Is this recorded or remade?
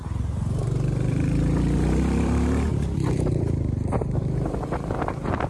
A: remade